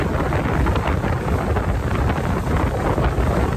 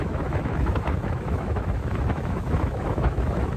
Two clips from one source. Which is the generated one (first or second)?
second